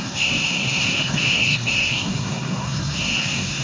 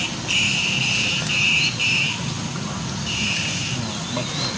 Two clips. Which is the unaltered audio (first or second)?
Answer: second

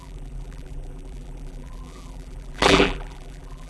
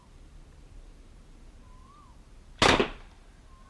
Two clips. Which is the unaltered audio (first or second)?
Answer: second